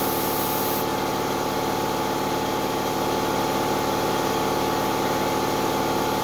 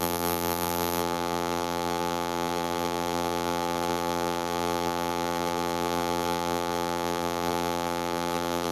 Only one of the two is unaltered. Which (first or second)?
first